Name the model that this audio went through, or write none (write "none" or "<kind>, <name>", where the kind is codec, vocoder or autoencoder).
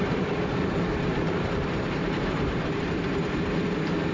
vocoder, BigVGAN v2